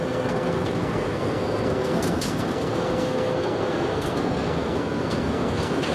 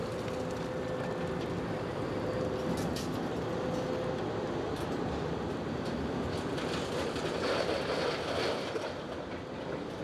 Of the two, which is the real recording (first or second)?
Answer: second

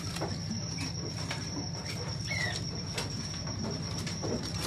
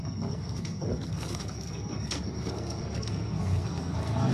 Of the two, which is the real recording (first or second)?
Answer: first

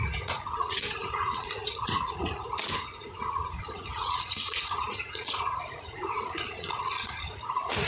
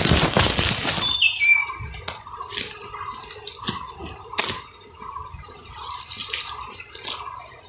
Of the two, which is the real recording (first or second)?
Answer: second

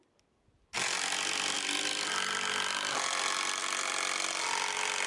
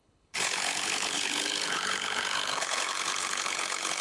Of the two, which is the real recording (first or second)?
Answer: first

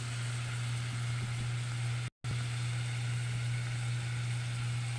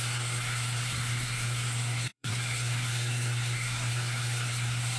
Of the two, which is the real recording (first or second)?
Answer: first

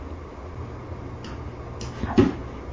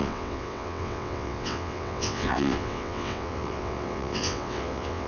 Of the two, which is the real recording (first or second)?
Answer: first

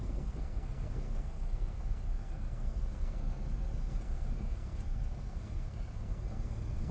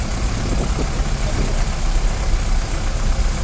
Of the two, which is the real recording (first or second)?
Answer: second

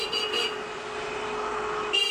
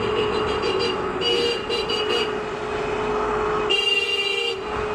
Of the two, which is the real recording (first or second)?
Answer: first